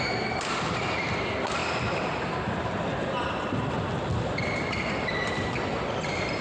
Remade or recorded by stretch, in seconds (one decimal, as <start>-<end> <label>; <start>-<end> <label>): 0.0-6.4 recorded